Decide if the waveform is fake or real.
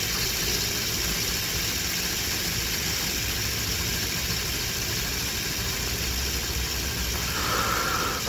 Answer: real